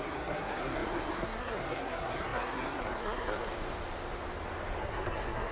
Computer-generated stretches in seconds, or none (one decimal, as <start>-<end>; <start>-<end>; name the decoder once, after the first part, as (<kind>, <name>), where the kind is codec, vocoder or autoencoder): 0.0-3.5 (codec, SNAC); 4.8-5.5